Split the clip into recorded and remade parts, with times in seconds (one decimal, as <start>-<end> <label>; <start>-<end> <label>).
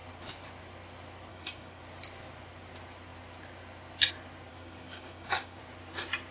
0.0-1.3 recorded; 1.3-1.8 remade; 1.8-4.5 recorded; 4.5-5.6 remade; 5.6-6.3 recorded